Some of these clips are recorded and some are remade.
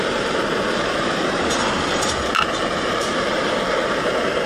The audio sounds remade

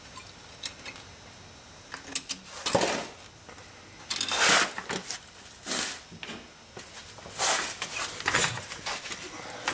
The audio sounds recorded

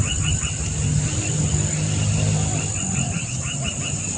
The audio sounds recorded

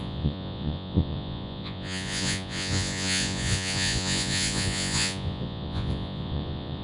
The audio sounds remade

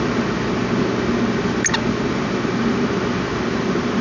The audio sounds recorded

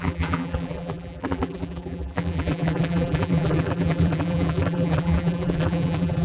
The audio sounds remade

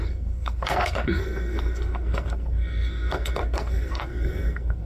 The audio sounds remade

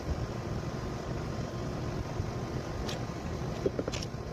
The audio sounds recorded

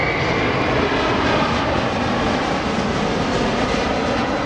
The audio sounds recorded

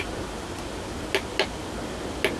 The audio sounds recorded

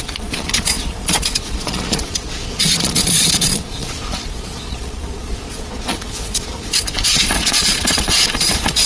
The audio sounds remade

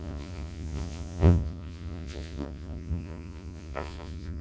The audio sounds remade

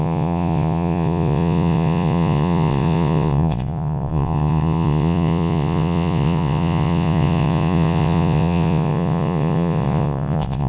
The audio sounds remade